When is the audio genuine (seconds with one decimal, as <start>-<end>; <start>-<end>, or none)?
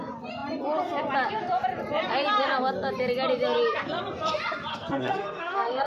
0.0-4.7